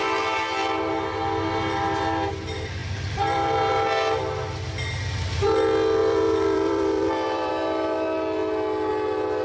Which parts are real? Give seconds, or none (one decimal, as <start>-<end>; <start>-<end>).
0.0-2.8; 3.7-6.0; 7.5-9.4